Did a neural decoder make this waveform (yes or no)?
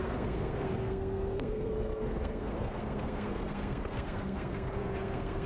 yes